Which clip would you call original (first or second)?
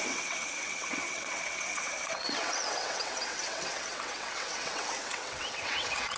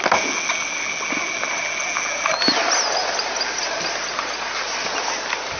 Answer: second